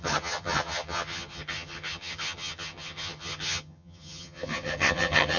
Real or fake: fake